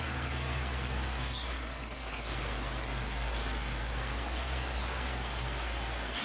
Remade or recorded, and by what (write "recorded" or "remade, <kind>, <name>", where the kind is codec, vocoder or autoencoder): remade, codec, SNAC